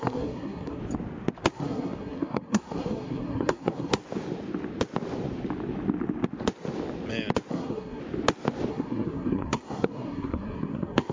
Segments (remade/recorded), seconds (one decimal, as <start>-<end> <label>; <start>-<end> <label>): 0.0-0.8 remade; 0.8-1.5 recorded; 1.5-4.0 remade; 4.0-7.5 recorded; 7.5-8.0 remade; 8.0-8.7 recorded; 8.7-11.1 remade